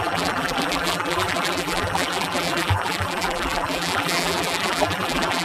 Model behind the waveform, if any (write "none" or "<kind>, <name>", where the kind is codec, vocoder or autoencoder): vocoder, BigVGAN v2